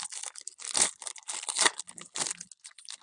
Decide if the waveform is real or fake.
real